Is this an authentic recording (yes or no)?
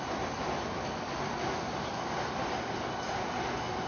yes